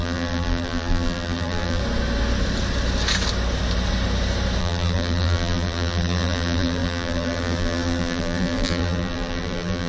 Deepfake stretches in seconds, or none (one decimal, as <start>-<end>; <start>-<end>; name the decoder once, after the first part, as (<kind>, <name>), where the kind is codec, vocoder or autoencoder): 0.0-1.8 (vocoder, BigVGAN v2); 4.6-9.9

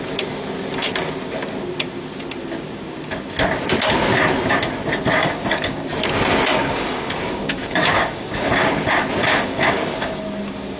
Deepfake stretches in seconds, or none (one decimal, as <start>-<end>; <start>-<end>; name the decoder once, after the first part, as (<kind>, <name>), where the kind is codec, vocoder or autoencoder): 5.2-5.9 (codec, DAC); 6.5-8.5; 9.2-10.2

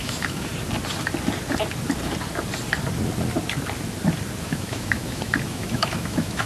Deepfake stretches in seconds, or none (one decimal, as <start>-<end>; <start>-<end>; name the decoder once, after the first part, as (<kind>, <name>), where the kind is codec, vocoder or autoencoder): 0.0-0.5 (autoencoder, DAC-VAE); 4.4-6.5